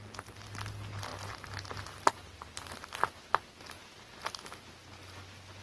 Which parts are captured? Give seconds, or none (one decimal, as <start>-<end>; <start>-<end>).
0.0-5.6